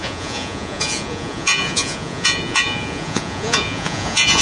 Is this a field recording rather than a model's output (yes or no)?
no